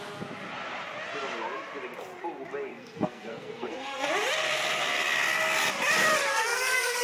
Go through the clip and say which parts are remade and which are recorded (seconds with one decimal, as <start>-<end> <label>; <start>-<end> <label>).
0.0-2.7 recorded; 2.7-4.1 remade; 4.1-6.3 recorded; 6.3-7.0 remade